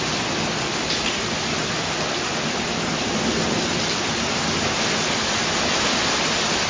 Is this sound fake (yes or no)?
no